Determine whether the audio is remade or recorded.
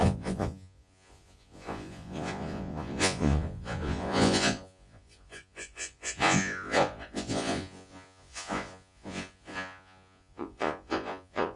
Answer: remade